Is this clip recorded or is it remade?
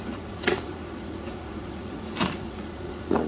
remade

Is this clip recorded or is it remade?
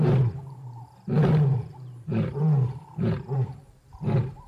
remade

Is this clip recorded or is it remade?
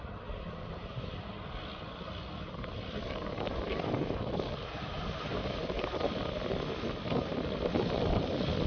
recorded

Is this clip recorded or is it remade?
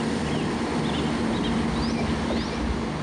recorded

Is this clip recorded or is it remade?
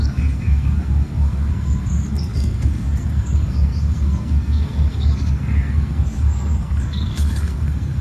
remade